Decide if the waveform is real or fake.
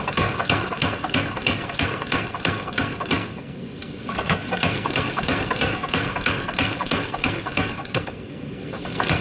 fake